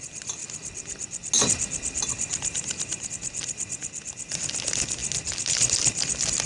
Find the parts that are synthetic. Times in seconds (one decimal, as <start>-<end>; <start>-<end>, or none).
none